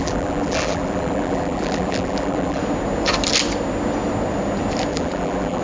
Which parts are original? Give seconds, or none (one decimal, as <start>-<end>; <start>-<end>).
2.6-4.9